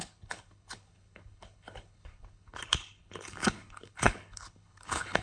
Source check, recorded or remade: remade